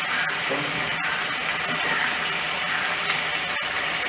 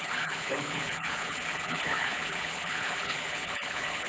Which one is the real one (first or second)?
first